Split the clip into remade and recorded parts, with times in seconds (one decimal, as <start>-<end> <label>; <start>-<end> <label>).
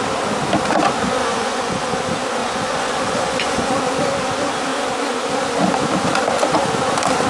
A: 0.0-1.2 recorded; 1.2-2.0 remade; 2.0-2.4 recorded; 2.4-3.7 remade; 3.7-7.3 recorded